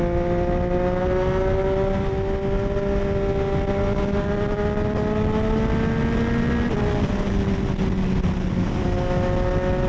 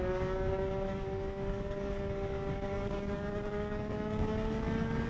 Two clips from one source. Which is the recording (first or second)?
first